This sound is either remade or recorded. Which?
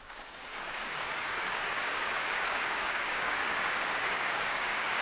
remade